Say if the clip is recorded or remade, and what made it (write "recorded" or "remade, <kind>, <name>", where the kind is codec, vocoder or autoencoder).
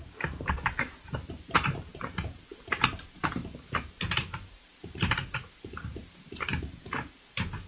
remade, vocoder, BigVGAN v2